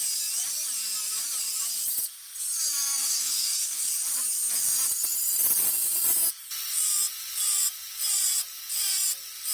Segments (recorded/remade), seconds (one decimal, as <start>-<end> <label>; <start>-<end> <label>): 0.0-3.0 recorded; 3.0-3.9 remade; 3.9-9.5 recorded